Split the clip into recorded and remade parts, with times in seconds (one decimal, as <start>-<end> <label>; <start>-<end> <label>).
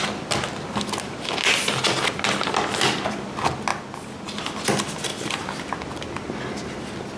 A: 0.0-5.1 recorded; 5.1-5.6 remade; 5.6-7.2 recorded